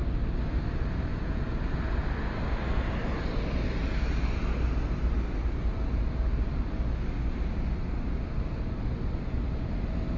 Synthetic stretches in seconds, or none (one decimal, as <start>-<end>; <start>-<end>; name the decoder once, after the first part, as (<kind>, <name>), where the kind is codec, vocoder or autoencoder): 1.1-1.6 (vocoder, Vocos)